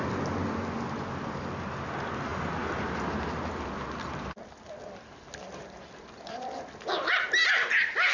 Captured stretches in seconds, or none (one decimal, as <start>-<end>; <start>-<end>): 0.0-8.1